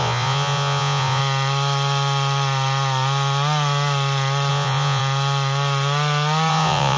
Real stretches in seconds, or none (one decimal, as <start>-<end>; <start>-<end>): 1.2-4.5; 5.0-6.5